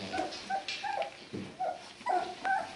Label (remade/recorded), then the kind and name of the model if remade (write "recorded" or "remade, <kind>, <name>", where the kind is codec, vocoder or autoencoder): recorded